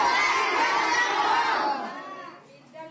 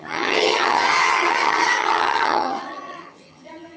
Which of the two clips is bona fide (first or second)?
first